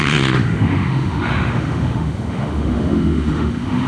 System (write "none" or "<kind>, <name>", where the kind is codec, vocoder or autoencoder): autoencoder, DAC-VAE